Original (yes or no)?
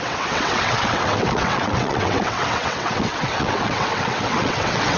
no